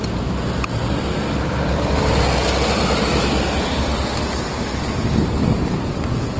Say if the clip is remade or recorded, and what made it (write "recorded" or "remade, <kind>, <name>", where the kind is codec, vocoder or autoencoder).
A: recorded